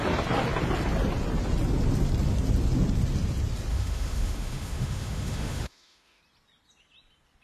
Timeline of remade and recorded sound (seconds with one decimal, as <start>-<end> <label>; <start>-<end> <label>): 0.0-3.7 recorded; 3.7-6.2 remade; 6.2-7.4 recorded